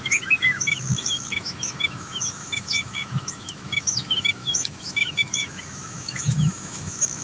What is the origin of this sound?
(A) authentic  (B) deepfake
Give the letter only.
B